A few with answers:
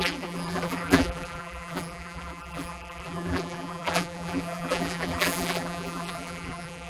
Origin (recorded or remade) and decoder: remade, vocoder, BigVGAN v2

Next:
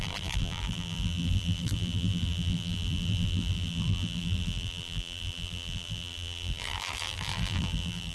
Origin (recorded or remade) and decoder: remade, vocoder, BigVGAN v2